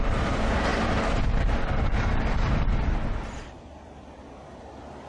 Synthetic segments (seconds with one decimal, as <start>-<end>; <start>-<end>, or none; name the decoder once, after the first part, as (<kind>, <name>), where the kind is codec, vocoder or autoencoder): 0.0-5.1 (vocoder, BigVGAN v2)